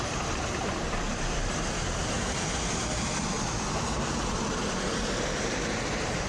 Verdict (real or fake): fake